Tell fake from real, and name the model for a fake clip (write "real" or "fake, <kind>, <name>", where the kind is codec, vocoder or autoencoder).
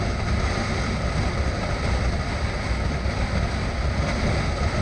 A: real